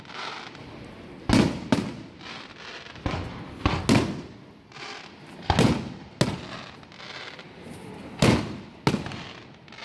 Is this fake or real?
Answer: real